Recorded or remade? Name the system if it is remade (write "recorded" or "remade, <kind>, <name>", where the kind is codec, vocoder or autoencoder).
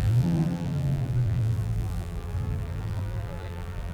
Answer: remade, vocoder, BigVGAN v2